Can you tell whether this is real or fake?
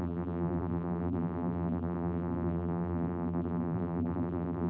fake